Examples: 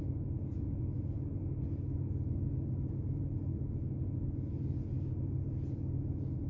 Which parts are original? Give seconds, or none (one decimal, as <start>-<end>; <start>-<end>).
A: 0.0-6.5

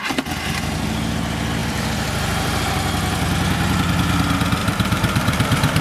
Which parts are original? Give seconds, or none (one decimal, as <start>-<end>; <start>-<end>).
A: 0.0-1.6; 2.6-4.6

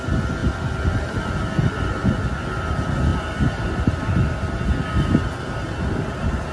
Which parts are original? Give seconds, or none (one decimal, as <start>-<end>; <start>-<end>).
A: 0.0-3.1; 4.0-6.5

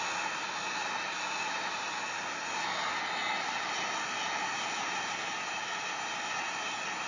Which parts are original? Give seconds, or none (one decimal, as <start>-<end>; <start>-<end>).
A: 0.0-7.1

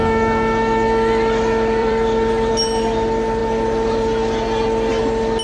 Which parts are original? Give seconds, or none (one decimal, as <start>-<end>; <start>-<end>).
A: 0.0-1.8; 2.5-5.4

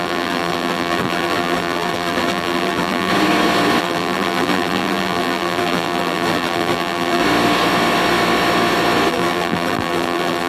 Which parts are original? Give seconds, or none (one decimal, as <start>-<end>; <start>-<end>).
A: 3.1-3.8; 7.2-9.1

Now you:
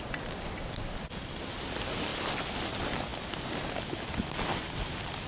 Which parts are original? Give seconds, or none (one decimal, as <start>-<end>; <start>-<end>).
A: 0.0-5.3

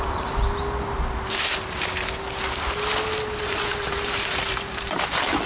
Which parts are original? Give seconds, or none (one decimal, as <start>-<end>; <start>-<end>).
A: 0.4-3.4